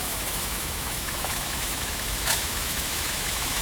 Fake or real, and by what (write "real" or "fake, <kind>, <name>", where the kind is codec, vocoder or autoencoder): fake, autoencoder, DAC-VAE